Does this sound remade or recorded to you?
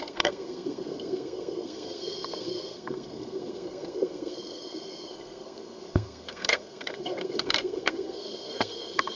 remade